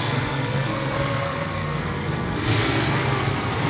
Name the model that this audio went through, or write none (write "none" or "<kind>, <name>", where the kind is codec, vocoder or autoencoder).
codec, SNAC